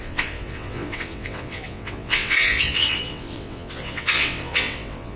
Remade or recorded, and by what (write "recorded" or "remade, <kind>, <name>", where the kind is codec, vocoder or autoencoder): remade, vocoder, WaveNeXt